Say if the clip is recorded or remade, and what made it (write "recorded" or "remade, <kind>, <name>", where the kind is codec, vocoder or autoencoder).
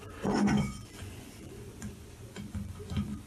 remade, vocoder, Vocos